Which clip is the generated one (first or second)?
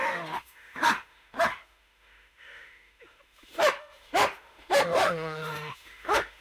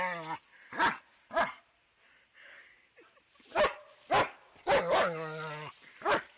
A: first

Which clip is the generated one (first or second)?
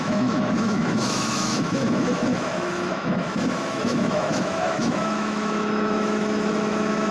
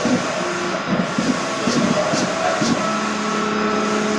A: first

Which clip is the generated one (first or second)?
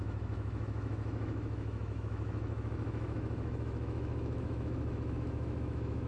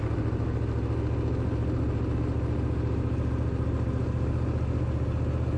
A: first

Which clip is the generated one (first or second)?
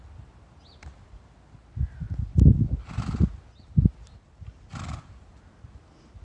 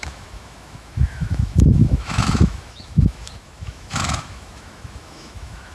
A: second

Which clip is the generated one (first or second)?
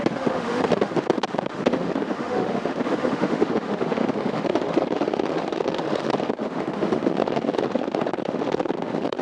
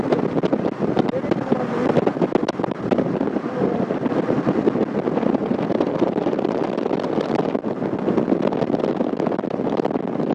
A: first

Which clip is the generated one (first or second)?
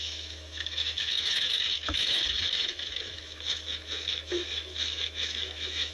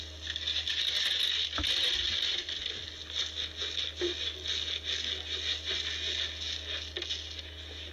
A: first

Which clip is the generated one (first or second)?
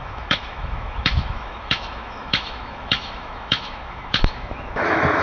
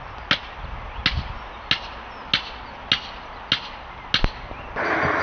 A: first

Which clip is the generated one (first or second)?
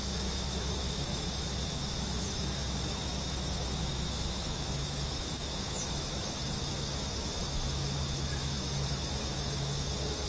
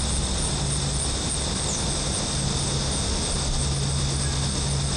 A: first